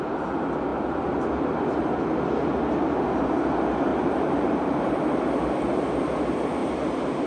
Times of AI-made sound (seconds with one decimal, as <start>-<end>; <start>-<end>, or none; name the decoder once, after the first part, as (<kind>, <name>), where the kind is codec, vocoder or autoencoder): 3.9-5.0 (vocoder, BigVGAN v2)